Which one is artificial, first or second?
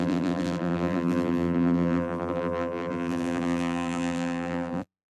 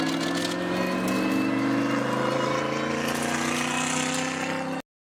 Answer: first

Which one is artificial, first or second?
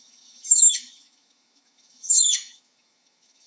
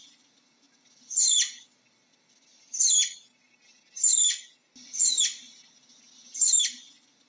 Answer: first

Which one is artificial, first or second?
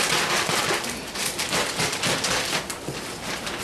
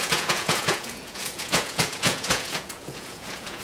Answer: second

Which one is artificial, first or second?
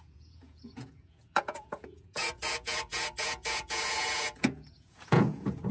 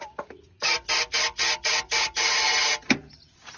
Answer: first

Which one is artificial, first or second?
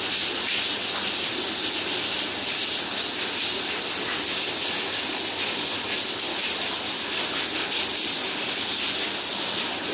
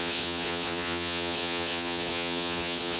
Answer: second